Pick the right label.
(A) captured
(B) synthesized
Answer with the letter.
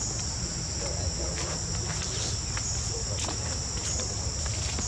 A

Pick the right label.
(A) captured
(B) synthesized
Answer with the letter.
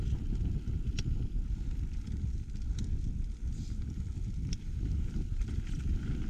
A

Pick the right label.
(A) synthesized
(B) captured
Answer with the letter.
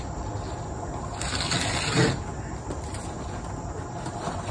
B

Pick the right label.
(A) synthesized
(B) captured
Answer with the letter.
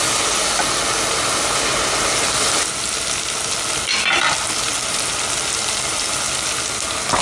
B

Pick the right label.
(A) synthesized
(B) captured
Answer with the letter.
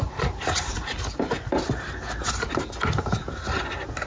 B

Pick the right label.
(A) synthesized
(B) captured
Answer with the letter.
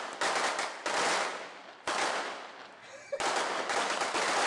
B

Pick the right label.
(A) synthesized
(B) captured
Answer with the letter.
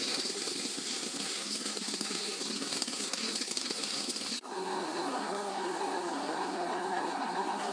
A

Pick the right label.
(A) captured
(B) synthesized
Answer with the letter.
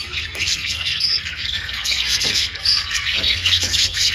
B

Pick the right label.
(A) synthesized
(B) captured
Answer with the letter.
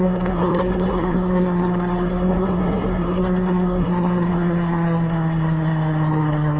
A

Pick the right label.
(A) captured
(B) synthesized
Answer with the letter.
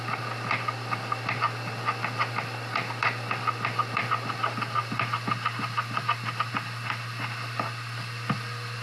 A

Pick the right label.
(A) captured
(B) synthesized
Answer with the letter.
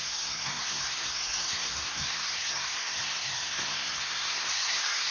B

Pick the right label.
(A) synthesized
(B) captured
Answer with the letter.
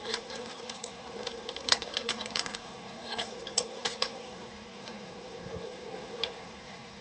A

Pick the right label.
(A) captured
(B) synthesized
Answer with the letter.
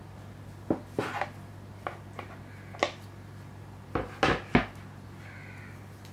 A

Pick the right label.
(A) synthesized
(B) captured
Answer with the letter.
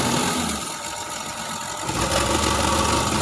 B